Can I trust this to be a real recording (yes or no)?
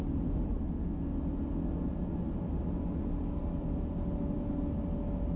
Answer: yes